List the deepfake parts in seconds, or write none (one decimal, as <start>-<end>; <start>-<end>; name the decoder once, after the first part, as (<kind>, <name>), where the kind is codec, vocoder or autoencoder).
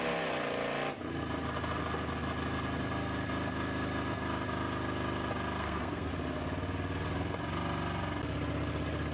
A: 5.6-6.1 (codec, SNAC)